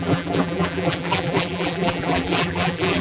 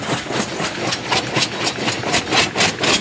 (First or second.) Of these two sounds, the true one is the second